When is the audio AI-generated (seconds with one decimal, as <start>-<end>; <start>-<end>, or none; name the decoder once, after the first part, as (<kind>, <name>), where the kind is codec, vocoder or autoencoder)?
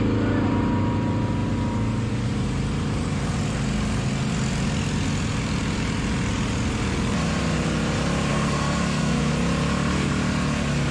8.3-9.3 (codec, SNAC)